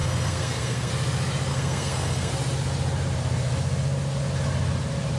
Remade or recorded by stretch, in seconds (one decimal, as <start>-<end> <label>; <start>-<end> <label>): 0.0-0.9 remade; 0.9-1.5 recorded; 1.5-2.3 remade; 2.3-5.2 recorded

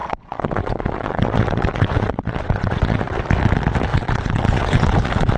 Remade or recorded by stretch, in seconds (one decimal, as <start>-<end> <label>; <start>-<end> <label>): 0.0-3.2 remade; 3.2-3.9 recorded; 3.9-5.4 remade

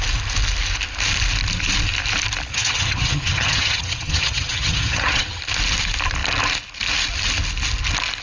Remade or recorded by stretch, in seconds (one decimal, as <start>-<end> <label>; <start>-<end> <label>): 0.0-2.5 recorded; 2.5-5.4 remade; 5.4-8.2 recorded

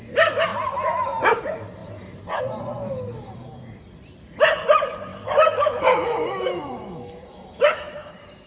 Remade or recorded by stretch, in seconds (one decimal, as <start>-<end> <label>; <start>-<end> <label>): 0.0-5.1 recorded; 5.1-8.1 remade; 8.1-8.5 recorded

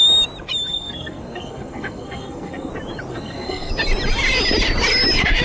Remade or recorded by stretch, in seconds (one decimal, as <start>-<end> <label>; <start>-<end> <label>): 0.0-0.7 recorded; 0.7-2.7 remade; 2.7-3.1 recorded; 3.1-3.7 remade; 3.7-5.4 recorded